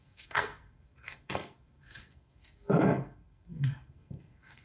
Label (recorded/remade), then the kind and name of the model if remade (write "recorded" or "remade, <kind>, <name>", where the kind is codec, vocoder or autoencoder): remade, codec, SNAC